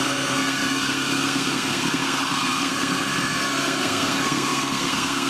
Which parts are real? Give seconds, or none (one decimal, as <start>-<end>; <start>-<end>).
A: none